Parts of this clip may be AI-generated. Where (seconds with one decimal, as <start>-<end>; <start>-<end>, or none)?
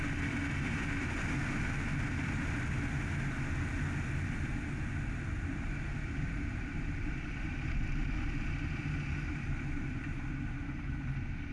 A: 5.5-10.5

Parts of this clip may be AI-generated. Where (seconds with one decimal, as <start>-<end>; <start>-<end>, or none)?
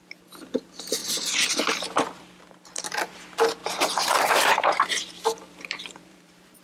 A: 3.6-6.6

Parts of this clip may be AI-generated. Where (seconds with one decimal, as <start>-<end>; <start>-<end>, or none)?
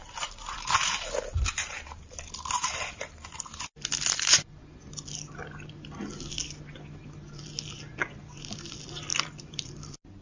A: 0.0-3.0; 9.1-9.7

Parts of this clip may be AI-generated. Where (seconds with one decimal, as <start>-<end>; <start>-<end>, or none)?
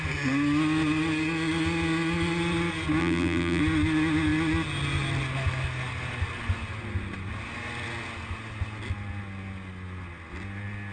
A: 3.0-3.6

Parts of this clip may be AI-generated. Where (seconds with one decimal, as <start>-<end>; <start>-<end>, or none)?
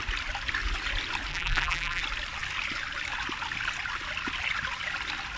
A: 1.3-2.0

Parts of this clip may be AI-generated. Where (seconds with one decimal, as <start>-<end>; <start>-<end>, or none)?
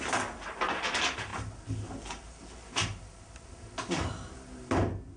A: none